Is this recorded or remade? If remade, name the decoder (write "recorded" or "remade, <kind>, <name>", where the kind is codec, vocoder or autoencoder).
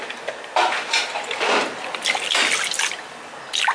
recorded